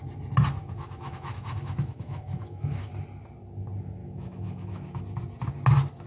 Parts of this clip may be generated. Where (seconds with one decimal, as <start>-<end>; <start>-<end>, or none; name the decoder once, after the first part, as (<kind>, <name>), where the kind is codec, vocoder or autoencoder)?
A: 0.6-2.9 (autoencoder, DAC-VAE); 4.0-5.0